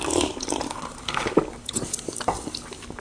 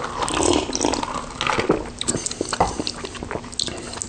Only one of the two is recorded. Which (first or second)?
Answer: second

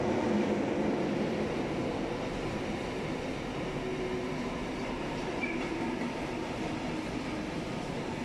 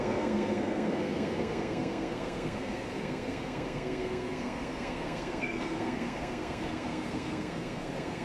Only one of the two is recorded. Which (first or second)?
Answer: first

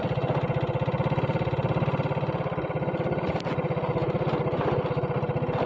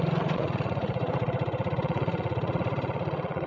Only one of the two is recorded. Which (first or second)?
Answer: first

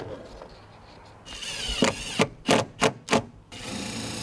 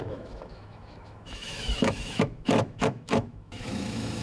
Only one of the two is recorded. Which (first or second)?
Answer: first